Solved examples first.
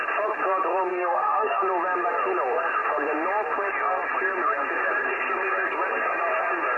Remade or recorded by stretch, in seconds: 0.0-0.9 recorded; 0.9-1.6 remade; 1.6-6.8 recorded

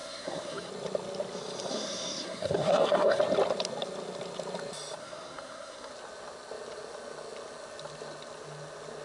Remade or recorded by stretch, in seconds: 0.0-0.7 remade; 0.7-1.7 recorded; 1.7-3.2 remade; 3.2-5.0 recorded; 5.0-5.9 remade; 5.9-9.0 recorded

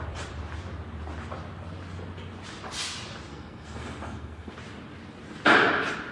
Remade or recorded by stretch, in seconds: 0.0-3.3 recorded; 3.3-4.6 remade; 4.6-6.1 recorded

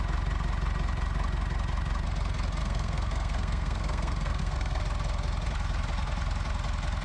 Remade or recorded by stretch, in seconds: 0.0-2.6 recorded; 2.6-4.8 remade; 4.8-7.0 recorded